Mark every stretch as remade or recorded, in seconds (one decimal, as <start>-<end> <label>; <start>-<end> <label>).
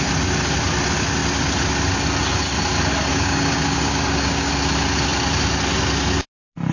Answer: 0.0-3.1 recorded; 3.1-4.5 remade; 4.5-6.7 recorded